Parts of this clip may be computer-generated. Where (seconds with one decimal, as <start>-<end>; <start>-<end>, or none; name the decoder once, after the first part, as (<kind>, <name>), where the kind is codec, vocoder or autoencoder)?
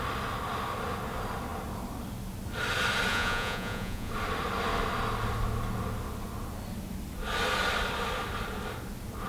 3.1-4.1 (vocoder, Vocos)